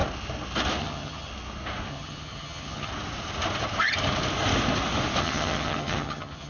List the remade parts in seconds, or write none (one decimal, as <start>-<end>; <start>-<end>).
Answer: 0.8-1.3; 1.9-2.9; 5.2-6.5